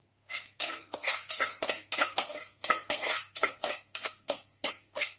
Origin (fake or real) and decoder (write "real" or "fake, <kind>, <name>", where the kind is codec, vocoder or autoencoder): fake, codec, SNAC